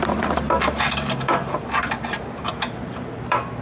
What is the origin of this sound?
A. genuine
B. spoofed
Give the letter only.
B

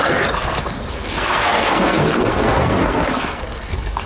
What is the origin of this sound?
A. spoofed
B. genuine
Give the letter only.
A